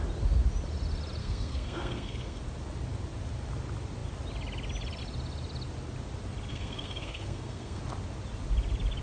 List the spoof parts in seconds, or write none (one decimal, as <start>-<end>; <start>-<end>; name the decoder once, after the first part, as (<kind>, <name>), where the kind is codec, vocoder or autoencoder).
1.2-2.4 (codec, SNAC); 6.5-7.8